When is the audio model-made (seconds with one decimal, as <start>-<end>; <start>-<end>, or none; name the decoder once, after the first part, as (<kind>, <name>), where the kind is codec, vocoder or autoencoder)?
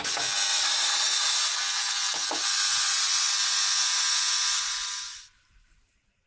0.5-1.6 (vocoder, Vocos)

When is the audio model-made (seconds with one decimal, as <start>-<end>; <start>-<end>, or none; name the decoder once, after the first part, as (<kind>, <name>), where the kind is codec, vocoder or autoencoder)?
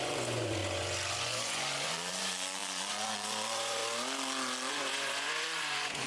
0.0-3.8 (vocoder, Vocos); 4.7-6.1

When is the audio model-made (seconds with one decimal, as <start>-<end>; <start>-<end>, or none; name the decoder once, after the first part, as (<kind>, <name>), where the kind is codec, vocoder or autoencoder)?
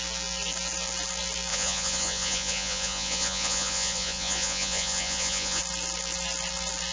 1.5-5.6 (vocoder, Vocos)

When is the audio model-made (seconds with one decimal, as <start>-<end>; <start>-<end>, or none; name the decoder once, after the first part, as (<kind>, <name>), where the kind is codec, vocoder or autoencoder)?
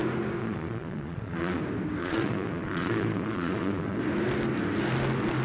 0.4-1.6 (vocoder, Vocos); 2.0-4.0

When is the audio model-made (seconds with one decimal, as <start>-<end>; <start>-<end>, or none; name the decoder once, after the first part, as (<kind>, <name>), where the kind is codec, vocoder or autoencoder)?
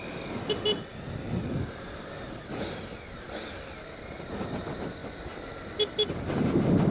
none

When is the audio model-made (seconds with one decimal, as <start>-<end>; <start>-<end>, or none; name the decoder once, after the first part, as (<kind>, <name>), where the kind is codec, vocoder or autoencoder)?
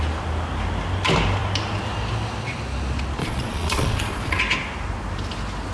3.2-4.4 (vocoder, Vocos)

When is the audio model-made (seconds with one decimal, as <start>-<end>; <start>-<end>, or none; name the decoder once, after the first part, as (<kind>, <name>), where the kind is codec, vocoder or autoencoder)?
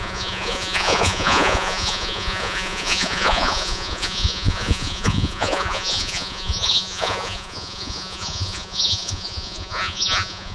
0.0-10.5 (vocoder, Vocos)